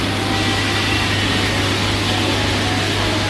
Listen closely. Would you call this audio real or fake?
real